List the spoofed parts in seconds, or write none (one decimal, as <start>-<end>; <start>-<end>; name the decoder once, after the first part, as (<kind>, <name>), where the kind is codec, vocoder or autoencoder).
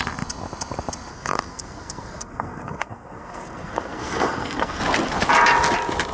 1.1-4.8 (codec, SNAC)